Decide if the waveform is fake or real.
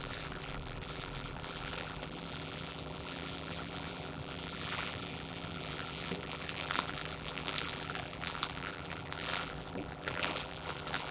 fake